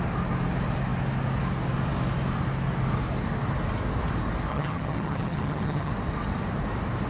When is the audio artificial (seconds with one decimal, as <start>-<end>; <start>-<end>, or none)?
4.5-5.9